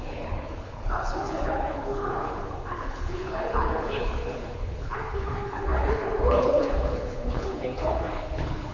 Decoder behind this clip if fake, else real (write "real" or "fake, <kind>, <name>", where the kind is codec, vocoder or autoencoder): fake, codec, HILCodec